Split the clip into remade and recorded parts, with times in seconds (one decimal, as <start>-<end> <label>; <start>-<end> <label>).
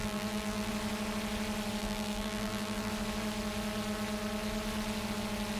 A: 0.0-0.7 remade; 0.7-1.8 recorded; 1.8-2.9 remade; 2.9-5.6 recorded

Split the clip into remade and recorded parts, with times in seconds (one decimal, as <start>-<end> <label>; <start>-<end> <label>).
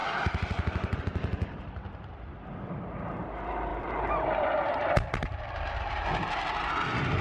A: 0.0-1.0 remade; 1.0-3.7 recorded; 3.7-6.7 remade; 6.7-7.2 recorded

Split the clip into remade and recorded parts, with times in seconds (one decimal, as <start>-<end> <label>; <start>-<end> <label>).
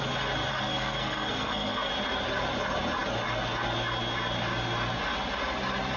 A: 0.0-0.5 recorded; 0.5-1.9 remade; 1.9-6.0 recorded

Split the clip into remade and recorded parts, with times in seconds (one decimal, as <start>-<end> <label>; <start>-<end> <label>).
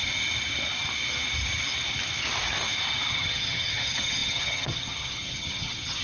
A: 0.0-3.1 recorded; 3.1-6.0 remade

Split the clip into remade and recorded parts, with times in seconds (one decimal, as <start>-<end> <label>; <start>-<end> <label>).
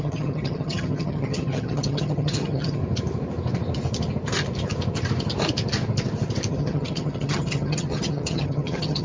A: 0.0-2.8 remade; 2.8-6.5 recorded; 6.5-9.0 remade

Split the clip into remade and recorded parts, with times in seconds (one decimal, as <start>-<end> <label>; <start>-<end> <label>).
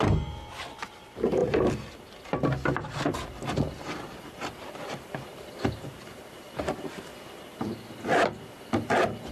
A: 0.0-9.3 recorded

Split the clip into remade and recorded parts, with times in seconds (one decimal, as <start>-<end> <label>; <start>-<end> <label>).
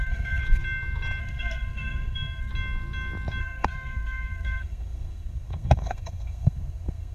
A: 0.0-0.4 remade; 0.4-1.2 recorded; 1.2-2.5 remade; 2.5-3.4 recorded; 3.4-7.1 remade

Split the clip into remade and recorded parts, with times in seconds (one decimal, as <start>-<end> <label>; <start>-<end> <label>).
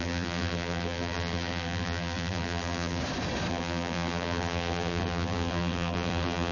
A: 0.0-3.0 remade; 3.0-3.5 recorded; 3.5-6.5 remade